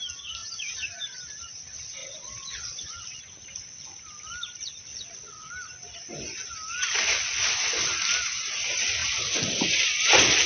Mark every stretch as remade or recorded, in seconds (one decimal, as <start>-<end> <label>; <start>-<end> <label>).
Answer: 0.0-2.0 recorded; 2.0-3.2 remade; 3.2-4.9 recorded; 4.9-5.5 remade; 5.5-10.5 recorded